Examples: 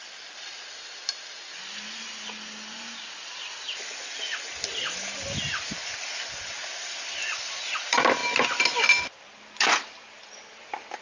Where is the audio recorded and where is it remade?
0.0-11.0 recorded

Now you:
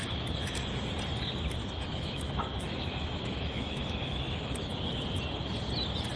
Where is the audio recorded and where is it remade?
0.0-0.9 remade; 0.9-1.6 recorded; 1.6-4.8 remade; 4.8-6.2 recorded